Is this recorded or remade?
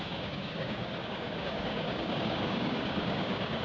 remade